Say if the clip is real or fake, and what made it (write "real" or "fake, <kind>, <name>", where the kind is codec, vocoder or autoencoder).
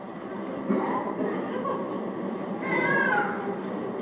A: real